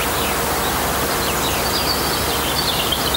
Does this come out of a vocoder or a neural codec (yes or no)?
yes